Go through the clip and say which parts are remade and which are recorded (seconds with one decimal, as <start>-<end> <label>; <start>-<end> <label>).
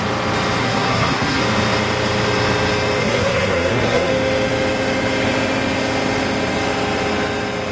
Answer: 0.0-0.6 recorded; 0.6-1.4 remade; 1.4-3.0 recorded; 3.0-4.1 remade; 4.1-7.7 recorded